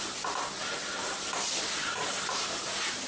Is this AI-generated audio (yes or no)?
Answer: yes